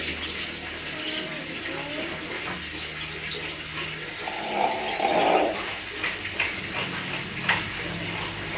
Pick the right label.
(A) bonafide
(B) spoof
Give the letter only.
A